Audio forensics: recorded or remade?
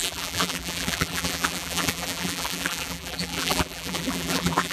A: remade